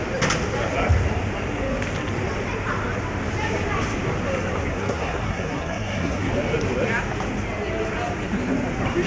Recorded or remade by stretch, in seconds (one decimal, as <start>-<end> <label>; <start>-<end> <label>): 0.0-4.7 recorded; 4.7-6.3 remade; 6.3-9.1 recorded